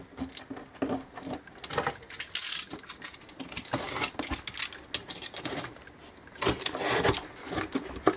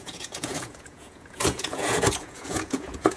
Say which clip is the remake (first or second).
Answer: second